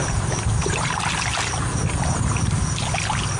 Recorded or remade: recorded